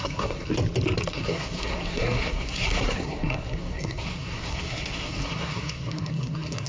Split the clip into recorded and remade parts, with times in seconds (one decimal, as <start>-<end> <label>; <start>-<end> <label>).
0.0-0.5 remade; 0.5-1.1 recorded; 1.1-6.7 remade